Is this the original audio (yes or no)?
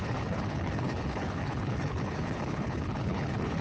no